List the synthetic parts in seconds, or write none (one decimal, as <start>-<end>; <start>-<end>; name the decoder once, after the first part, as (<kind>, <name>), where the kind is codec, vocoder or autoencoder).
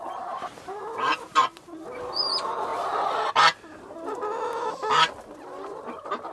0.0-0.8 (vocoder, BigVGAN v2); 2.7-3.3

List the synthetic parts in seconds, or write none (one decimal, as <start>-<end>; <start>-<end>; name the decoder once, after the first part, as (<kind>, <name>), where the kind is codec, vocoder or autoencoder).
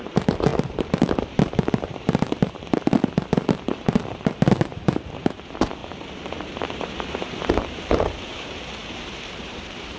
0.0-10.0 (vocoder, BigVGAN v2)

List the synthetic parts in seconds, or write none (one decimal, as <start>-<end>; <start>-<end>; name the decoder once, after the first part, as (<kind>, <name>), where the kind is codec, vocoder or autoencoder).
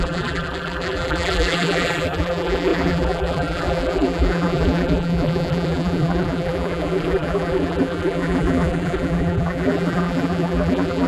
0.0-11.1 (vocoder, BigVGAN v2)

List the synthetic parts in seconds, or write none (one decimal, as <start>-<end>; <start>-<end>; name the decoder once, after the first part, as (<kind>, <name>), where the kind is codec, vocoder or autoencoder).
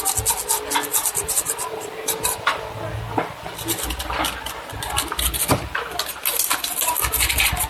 0.9-2.2 (vocoder, BigVGAN v2)